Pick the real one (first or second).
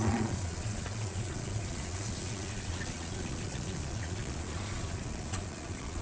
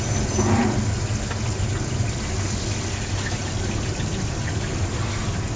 second